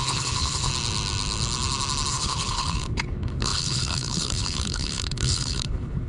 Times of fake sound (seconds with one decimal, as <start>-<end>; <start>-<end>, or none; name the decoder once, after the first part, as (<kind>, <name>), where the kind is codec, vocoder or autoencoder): 0.0-0.7 (codec, HILCodec); 2.1-6.1